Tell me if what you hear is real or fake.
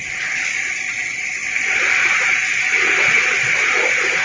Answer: real